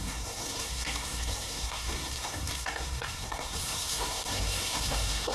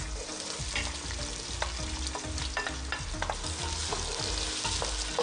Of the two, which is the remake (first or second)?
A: first